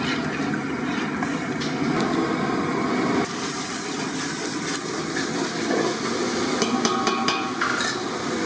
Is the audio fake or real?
real